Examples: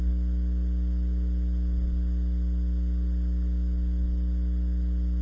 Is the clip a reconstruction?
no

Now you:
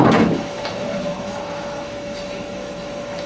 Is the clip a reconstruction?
yes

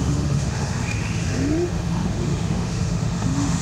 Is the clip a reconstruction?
yes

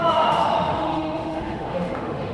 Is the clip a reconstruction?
yes